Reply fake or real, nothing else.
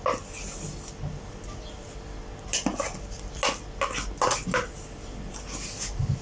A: real